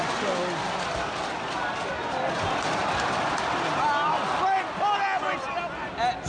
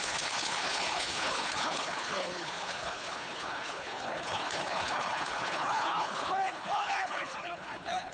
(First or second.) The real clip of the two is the first